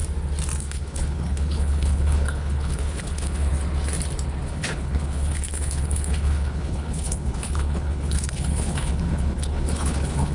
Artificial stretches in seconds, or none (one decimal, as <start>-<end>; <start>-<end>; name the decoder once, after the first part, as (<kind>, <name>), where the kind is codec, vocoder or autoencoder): 0.6-3.5 (codec, HILCodec); 4.5-10.3